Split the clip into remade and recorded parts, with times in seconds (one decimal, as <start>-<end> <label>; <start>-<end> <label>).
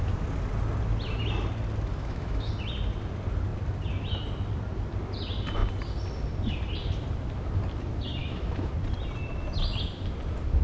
0.0-1.9 recorded; 1.9-2.5 remade; 2.5-8.2 recorded; 8.2-8.7 remade; 8.7-10.6 recorded